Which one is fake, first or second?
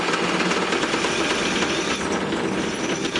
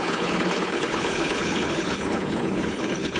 second